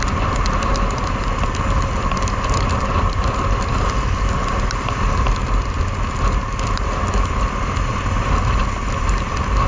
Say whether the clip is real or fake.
real